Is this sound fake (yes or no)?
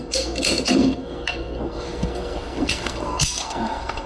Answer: yes